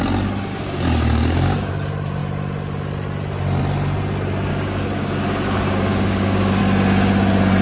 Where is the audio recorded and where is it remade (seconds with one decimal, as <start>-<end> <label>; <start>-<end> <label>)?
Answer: 0.0-0.5 recorded; 0.5-1.7 remade; 1.7-4.5 recorded; 4.5-6.6 remade; 6.6-7.6 recorded